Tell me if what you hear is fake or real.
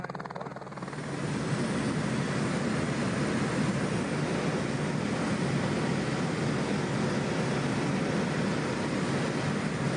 real